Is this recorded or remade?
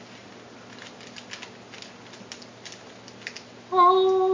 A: recorded